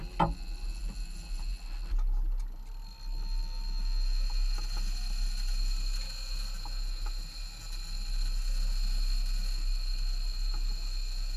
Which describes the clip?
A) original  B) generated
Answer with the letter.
A